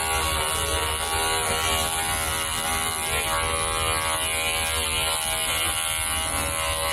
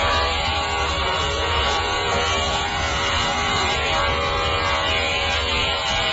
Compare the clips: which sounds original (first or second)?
first